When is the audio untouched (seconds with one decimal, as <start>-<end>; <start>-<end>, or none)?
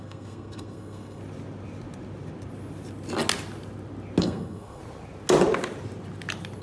1.2-4.2; 4.8-6.6